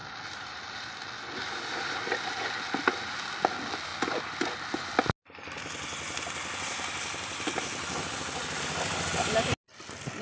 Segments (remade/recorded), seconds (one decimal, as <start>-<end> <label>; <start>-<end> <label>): 0.0-10.2 recorded